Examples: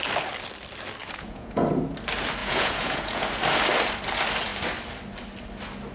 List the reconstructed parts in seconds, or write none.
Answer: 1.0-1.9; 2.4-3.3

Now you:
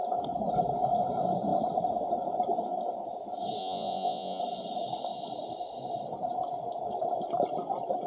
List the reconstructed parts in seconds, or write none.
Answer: 3.6-4.4

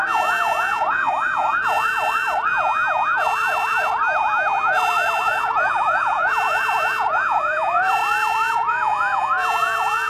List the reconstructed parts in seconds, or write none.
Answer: 0.0-1.5; 5.2-8.0; 8.5-10.1

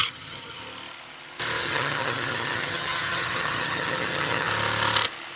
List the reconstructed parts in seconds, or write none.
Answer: 0.0-0.6; 1.6-4.5

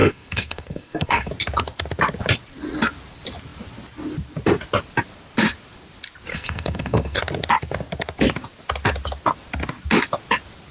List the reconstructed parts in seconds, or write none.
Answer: 0.0-1.3; 6.3-7.2

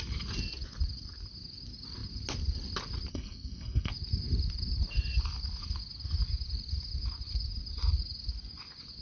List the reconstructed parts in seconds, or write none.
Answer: 3.1-3.9